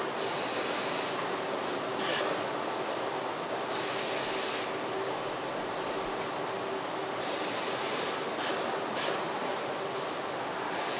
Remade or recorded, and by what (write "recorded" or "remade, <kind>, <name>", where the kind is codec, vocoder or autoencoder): recorded